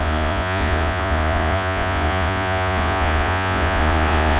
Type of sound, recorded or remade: remade